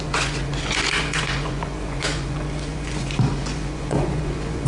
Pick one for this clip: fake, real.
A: fake